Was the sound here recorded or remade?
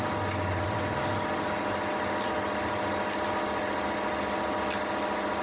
recorded